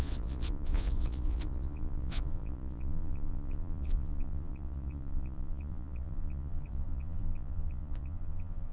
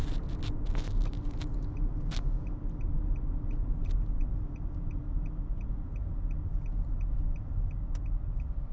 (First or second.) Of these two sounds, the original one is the second